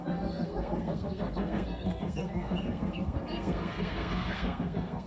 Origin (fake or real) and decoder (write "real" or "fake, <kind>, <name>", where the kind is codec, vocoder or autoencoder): fake, codec, SNAC